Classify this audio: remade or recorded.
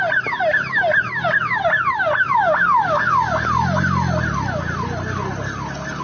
recorded